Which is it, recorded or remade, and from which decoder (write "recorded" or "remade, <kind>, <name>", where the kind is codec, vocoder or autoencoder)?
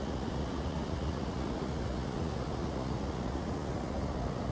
remade, vocoder, Vocos